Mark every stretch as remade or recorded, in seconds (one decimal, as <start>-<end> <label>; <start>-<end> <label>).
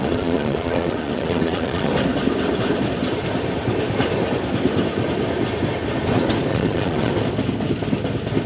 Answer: 0.0-1.9 remade; 1.9-6.5 recorded; 6.5-7.1 remade; 7.1-8.5 recorded